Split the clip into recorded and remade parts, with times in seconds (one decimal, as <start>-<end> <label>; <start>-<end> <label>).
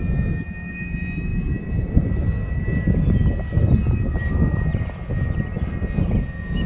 0.0-6.7 recorded